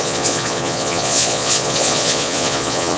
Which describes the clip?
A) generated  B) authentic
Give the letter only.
A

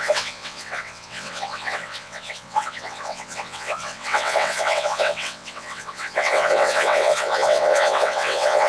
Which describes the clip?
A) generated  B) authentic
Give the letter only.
A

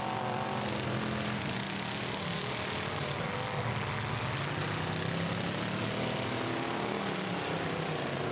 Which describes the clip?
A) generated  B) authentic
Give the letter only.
B